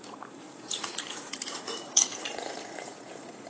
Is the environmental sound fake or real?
fake